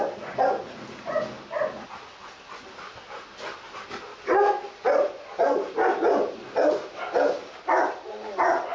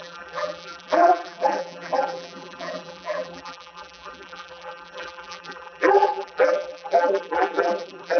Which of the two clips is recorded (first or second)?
first